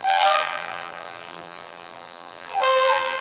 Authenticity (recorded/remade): remade